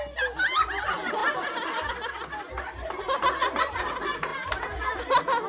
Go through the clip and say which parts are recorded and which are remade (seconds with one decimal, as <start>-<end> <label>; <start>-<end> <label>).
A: 0.0-3.4 recorded; 3.4-3.9 remade; 3.9-4.3 recorded; 4.3-5.0 remade; 5.0-5.5 recorded